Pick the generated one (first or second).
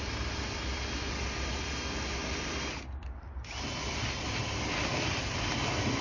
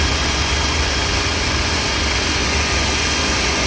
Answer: second